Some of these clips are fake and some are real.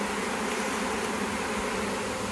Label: real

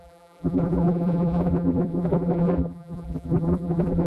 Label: fake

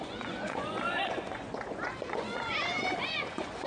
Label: fake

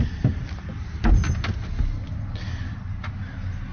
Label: real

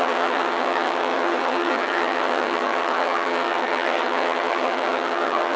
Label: fake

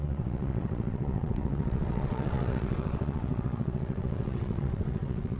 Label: fake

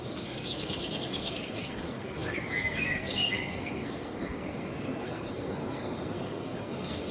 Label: fake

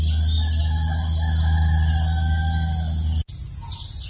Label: real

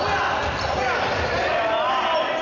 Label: real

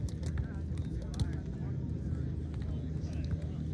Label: real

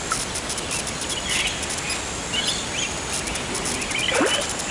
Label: real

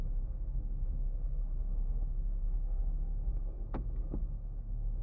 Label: fake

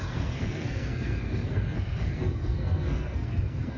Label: fake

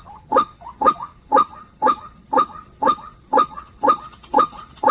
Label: fake